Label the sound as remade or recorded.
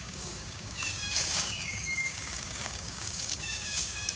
remade